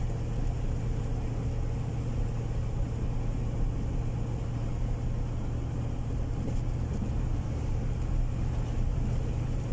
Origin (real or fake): real